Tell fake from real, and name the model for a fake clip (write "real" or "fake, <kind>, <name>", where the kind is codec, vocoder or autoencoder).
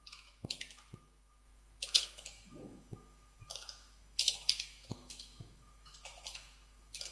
fake, autoencoder, DAC-VAE